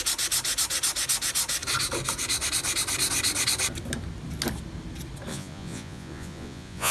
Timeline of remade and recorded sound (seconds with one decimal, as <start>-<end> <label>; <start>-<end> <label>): 0.0-5.3 recorded; 5.3-6.9 remade